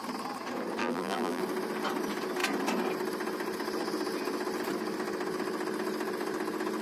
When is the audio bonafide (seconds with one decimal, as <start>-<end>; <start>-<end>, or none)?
0.0-0.8; 1.4-6.8